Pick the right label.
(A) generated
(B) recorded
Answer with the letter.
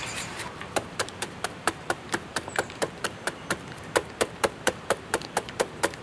A